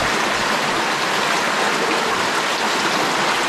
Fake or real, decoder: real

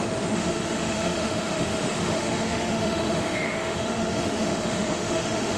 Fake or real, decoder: fake, autoencoder, DAC-VAE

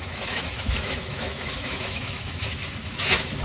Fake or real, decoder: fake, autoencoder, DAC-VAE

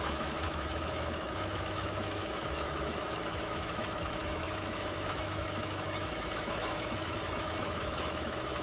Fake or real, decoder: fake, autoencoder, DAC-VAE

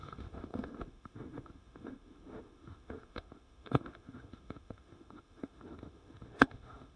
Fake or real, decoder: fake, autoencoder, DAC-VAE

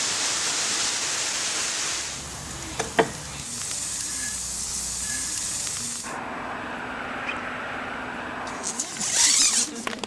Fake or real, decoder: real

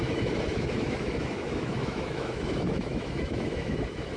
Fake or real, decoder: fake, autoencoder, DAC-VAE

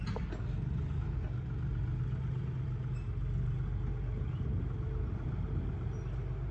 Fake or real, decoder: real